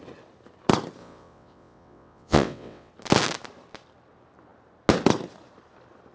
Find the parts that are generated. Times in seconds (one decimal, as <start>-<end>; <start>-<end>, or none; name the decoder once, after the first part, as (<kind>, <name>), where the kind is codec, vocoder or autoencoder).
1.0-2.9 (vocoder, WaveNeXt)